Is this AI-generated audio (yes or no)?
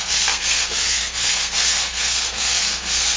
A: yes